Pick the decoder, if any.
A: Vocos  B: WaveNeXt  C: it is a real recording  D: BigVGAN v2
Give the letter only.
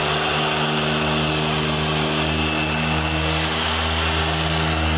C